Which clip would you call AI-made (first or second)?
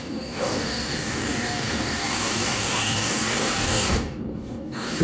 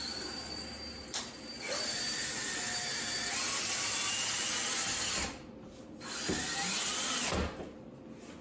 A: first